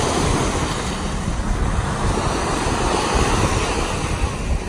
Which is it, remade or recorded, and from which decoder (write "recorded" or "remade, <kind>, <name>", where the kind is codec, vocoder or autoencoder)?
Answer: recorded